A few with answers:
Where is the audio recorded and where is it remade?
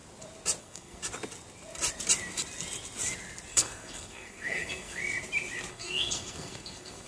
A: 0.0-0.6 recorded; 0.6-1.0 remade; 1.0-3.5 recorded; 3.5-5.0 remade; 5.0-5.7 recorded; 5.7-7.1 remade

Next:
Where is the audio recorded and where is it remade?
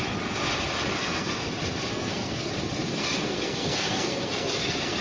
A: 0.0-0.9 recorded; 0.9-1.5 remade; 1.5-1.9 recorded; 1.9-2.5 remade; 2.5-2.9 recorded; 2.9-5.0 remade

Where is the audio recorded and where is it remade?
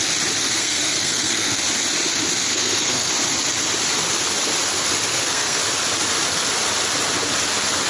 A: 0.0-0.4 recorded; 0.4-1.6 remade; 1.6-2.5 recorded; 2.5-3.1 remade; 3.1-5.1 recorded; 5.1-5.6 remade; 5.6-7.9 recorded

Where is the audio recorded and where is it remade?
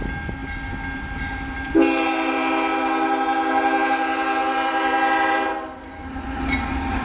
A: 0.0-7.0 recorded